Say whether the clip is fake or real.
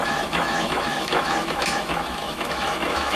fake